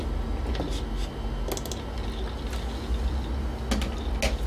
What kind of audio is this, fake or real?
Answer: real